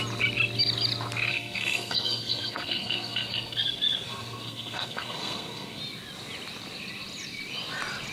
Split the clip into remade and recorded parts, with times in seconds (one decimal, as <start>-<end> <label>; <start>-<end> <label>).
0.0-1.3 recorded; 1.3-5.8 remade; 5.8-8.1 recorded